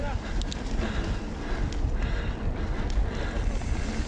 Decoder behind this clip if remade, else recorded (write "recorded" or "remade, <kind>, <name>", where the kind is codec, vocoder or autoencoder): recorded